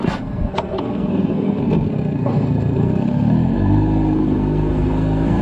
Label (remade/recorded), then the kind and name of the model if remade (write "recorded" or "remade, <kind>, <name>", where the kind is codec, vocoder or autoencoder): remade, codec, SNAC